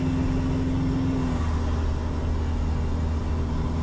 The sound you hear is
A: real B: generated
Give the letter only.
A